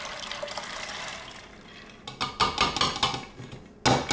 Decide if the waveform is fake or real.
real